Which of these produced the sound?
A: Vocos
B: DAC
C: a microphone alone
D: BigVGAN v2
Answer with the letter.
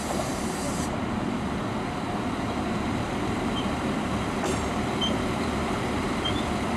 D